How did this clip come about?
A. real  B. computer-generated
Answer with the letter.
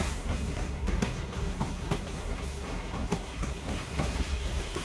B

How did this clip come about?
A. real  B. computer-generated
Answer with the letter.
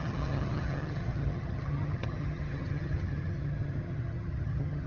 B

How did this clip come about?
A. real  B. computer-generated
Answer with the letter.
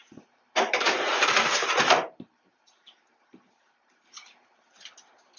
B